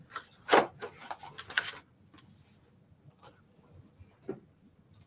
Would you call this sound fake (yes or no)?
no